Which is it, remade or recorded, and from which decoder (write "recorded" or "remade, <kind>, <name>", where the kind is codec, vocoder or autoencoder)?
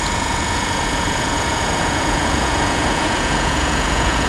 remade, vocoder, Vocos